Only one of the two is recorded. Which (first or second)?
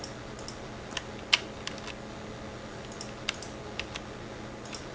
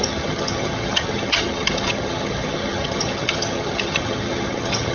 first